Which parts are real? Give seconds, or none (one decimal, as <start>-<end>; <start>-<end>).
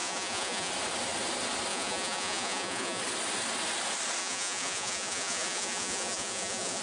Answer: 0.7-1.7; 3.0-4.2